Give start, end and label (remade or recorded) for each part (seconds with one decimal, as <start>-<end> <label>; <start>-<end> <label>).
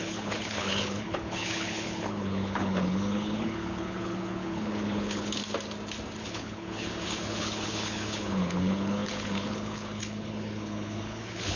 0.0-5.4 remade; 5.4-6.2 recorded; 6.2-11.6 remade